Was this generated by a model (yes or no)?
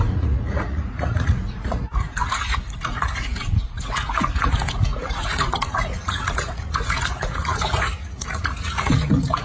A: yes